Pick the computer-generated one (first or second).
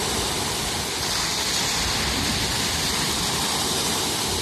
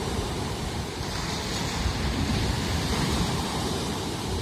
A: second